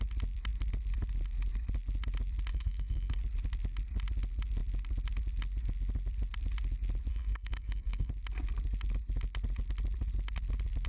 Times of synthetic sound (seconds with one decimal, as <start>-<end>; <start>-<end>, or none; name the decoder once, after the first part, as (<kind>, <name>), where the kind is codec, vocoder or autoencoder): 2.5-3.2 (codec, SNAC); 7.1-8.1